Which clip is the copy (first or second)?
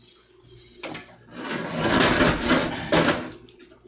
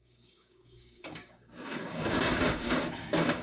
second